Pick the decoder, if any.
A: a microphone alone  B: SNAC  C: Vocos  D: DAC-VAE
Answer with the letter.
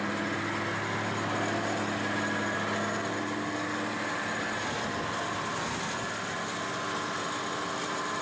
A